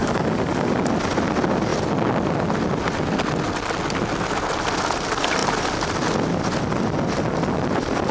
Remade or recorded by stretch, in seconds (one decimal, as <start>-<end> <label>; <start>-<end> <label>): 0.0-0.8 remade; 0.8-8.1 recorded